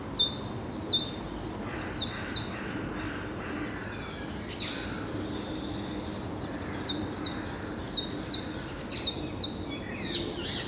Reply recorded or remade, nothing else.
recorded